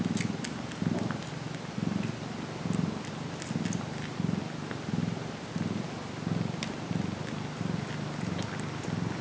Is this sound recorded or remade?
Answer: recorded